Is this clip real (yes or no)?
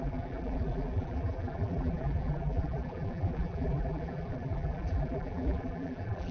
no